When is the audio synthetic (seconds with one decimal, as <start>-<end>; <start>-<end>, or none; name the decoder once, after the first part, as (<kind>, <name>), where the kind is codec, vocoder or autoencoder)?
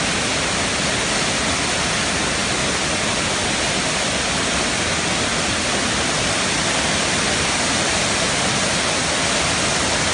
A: none